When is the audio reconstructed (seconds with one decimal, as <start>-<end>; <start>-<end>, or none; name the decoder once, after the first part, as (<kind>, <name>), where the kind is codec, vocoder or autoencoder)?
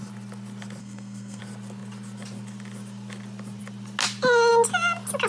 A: 0.8-1.4 (codec, SNAC)